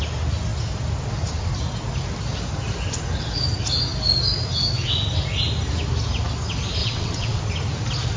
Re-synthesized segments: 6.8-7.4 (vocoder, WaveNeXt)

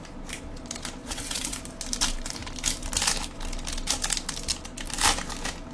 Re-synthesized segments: 1.0-1.6 (vocoder, WaveNeXt)

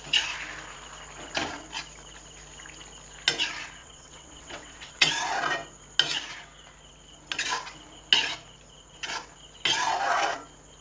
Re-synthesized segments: 3.8-5.1 (vocoder, WaveNeXt)

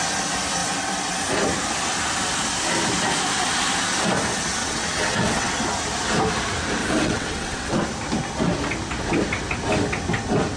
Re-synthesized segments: 4.6-5.5 (vocoder, WaveNeXt); 6.8-7.8

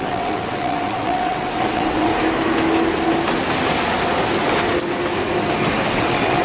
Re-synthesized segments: 0.0-2.1 (vocoder, WaveNeXt); 5.9-6.4

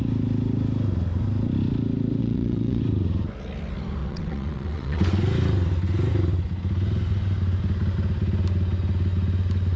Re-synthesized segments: 2.2-2.8 (vocoder, WaveNeXt); 4.0-5.0

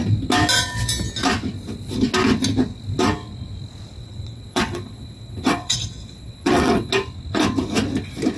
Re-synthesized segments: 4.0-6.9 (vocoder, WaveNeXt)

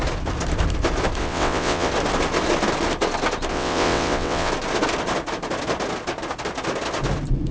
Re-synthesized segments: 1.2-1.9 (vocoder, WaveNeXt); 3.5-4.5